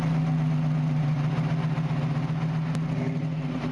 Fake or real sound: real